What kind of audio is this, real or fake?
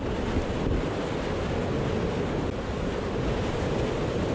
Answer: real